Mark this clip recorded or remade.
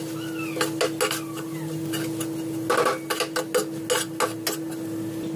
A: recorded